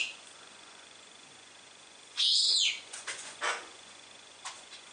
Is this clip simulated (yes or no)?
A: yes